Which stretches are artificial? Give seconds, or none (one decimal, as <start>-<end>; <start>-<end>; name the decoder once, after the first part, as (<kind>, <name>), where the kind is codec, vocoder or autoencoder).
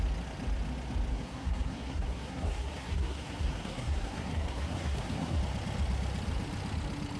1.1-5.4 (codec, SNAC)